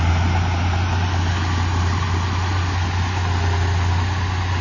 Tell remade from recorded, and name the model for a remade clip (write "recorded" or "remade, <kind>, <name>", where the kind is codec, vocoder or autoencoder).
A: recorded